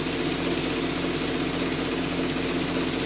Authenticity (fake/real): real